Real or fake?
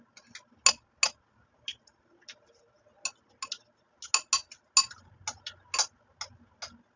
real